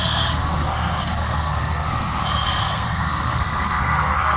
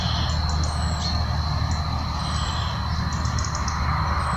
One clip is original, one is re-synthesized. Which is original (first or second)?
second